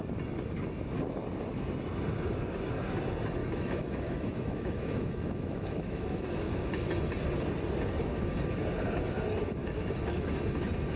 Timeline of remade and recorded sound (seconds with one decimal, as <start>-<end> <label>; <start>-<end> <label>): 0.0-3.4 recorded; 3.4-6.9 remade; 6.9-9.6 recorded; 9.6-10.3 remade; 10.3-11.0 recorded